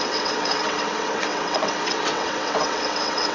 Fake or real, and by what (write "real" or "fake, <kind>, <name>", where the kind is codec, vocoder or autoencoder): fake, vocoder, WaveNeXt